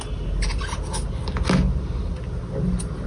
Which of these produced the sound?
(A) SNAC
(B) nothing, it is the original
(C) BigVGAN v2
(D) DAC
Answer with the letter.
B